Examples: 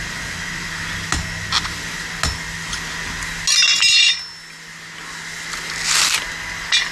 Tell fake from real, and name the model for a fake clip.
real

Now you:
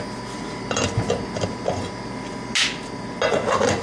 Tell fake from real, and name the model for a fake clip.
real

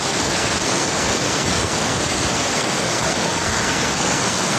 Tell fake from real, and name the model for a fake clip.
fake, codec, SNAC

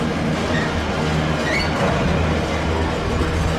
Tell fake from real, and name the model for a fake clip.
real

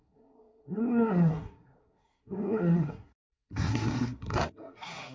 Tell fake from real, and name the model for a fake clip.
fake, codec, SNAC